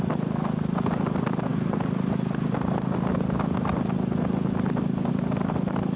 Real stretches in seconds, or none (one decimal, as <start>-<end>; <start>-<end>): 0.0-6.0